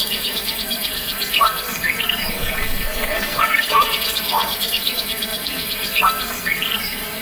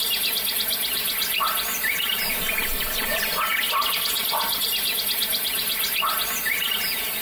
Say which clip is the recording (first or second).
second